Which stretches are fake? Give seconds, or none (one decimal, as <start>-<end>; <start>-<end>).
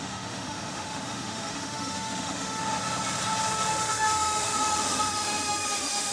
0.0-2.6; 3.7-6.1